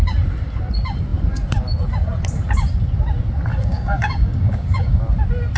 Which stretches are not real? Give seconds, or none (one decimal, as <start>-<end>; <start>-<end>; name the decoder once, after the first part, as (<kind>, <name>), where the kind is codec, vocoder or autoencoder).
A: 3.5-5.0 (codec, DAC)